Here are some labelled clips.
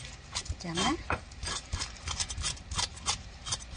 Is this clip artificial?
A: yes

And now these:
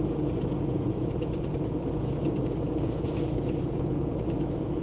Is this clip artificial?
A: yes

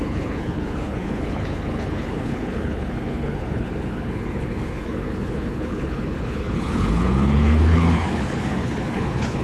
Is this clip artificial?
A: yes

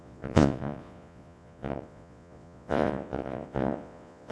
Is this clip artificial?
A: yes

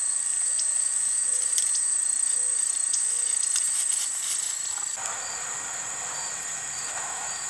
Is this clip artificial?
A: no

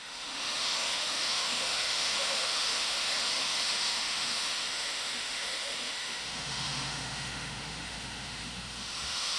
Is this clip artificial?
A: yes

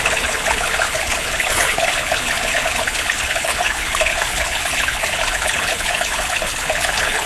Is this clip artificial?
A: yes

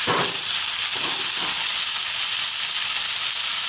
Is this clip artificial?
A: no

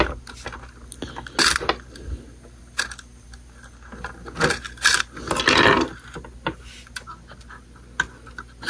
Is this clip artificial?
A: no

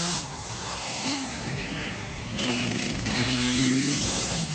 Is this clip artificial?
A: yes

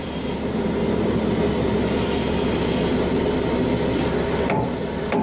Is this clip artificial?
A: no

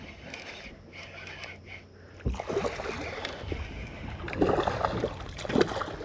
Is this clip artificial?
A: no